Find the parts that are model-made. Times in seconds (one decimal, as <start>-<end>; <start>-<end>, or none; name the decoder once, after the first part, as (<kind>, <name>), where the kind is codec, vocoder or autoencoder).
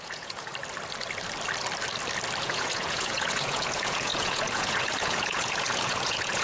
0.0-0.5 (vocoder, Vocos); 2.4-6.4